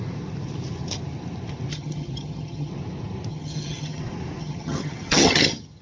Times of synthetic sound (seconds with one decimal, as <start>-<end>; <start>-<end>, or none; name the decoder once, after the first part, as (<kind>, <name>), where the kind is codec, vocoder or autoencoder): 1.7-2.7 (vocoder, HiFi-GAN); 3.3-4.0; 4.4-5.8